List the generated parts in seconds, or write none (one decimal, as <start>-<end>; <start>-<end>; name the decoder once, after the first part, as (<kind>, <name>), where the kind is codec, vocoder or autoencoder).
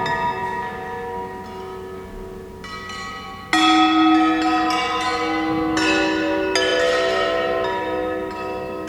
none